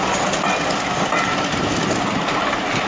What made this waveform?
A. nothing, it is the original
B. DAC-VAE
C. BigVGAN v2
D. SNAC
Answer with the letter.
A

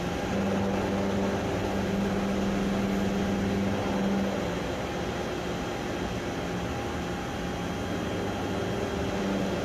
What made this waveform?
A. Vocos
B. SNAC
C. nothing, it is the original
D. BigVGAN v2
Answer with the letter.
C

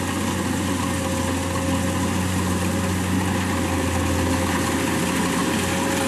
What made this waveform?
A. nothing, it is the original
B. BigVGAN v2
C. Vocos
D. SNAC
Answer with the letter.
A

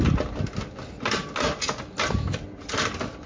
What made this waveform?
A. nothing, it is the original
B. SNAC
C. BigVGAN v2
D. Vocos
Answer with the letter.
A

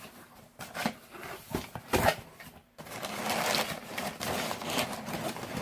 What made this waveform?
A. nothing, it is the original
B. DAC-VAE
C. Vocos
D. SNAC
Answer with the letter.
A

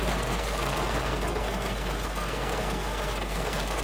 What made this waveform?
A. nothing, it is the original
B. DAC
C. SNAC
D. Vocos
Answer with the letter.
C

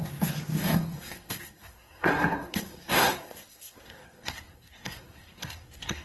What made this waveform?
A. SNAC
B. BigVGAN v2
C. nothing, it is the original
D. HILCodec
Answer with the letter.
A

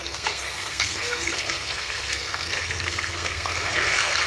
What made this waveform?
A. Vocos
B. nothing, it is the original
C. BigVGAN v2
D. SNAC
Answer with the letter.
D